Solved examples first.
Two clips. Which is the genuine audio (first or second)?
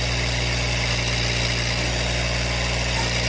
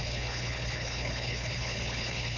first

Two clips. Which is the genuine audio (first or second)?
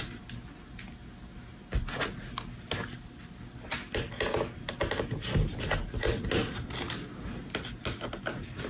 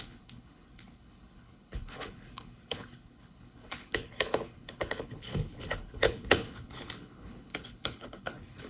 first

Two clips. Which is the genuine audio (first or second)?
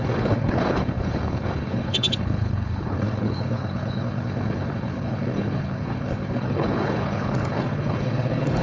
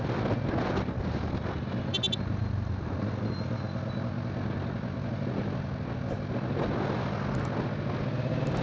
second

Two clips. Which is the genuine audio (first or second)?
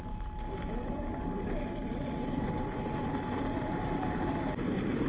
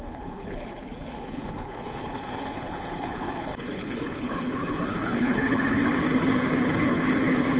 first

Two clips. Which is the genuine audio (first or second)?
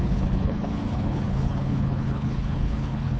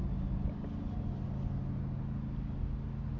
second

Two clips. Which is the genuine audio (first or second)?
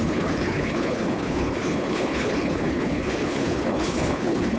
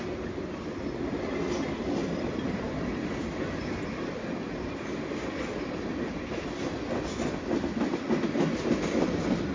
second